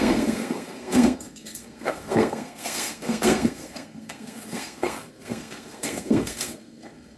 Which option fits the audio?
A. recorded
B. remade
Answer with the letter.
B